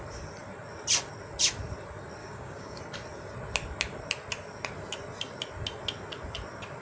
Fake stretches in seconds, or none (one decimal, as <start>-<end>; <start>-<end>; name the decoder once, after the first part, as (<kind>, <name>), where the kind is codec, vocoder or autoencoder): 2.2-2.8 (codec, DAC)